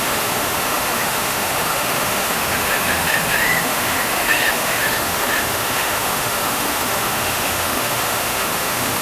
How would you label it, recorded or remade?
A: remade